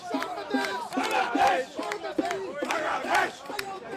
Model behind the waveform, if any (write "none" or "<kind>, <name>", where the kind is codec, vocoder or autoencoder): vocoder, BigVGAN v2